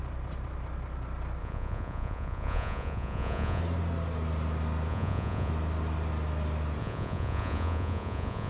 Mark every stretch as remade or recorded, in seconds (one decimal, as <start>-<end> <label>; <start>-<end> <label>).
0.0-1.4 recorded; 1.4-3.6 remade; 3.6-4.9 recorded; 4.9-5.5 remade; 5.5-6.8 recorded; 6.8-8.5 remade